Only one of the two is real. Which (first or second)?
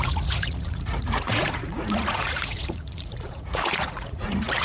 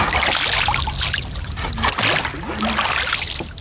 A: second